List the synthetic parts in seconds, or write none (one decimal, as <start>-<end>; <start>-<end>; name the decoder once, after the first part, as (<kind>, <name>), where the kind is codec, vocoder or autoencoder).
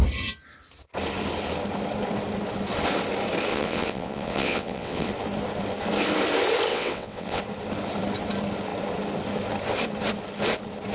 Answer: 3.5-5.1 (vocoder, WaveNeXt); 6.7-7.4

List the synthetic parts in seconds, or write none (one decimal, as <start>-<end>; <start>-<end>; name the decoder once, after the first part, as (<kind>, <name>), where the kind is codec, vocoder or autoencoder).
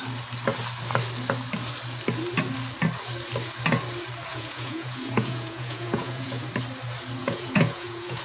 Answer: 4.3-6.5 (vocoder, Vocos); 7.2-8.2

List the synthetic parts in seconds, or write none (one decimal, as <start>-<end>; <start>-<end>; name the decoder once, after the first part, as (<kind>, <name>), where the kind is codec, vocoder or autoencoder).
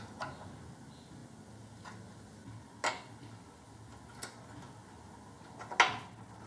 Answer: none